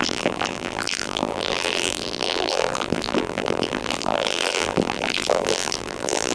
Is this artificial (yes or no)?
yes